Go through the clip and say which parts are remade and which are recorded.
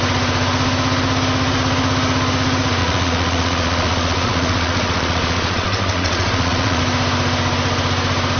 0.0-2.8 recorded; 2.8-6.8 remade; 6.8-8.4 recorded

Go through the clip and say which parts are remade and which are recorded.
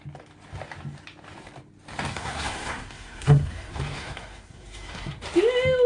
0.0-2.1 recorded; 2.1-5.2 remade; 5.2-5.9 recorded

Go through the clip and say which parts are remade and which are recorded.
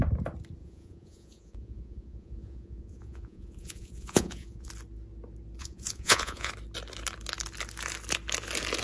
0.0-0.6 recorded; 0.6-4.7 remade; 4.7-5.6 recorded; 5.6-6.5 remade; 6.5-8.8 recorded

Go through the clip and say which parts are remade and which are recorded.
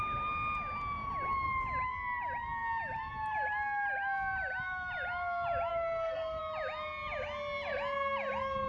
0.0-5.7 recorded; 5.7-6.4 remade; 6.4-8.7 recorded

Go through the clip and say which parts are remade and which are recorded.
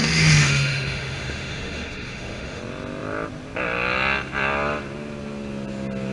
0.0-2.6 remade; 2.6-6.1 recorded